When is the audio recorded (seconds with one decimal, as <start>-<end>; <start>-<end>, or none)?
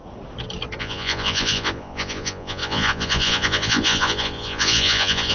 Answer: 0.0-0.8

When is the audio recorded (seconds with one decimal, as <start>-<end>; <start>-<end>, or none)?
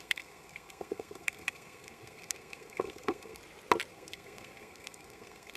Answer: 3.4-3.9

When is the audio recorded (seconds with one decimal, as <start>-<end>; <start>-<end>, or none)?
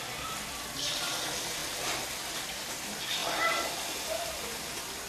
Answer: 1.6-2.2; 3.2-4.3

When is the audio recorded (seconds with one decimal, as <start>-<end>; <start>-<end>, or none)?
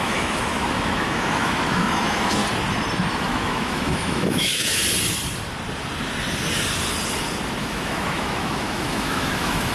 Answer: 2.4-3.1; 4.8-7.6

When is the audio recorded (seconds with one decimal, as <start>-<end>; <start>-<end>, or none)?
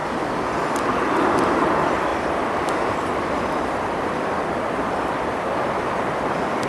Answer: 0.0-1.0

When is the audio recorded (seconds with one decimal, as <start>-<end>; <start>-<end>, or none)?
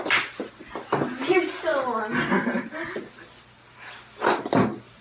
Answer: 0.0-5.0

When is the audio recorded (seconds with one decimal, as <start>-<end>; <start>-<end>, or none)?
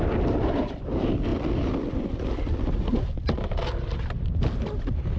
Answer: 0.0-5.2